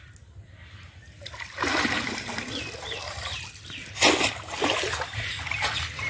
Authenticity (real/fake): real